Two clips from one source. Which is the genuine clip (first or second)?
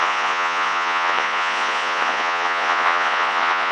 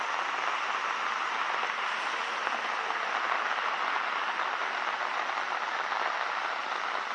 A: second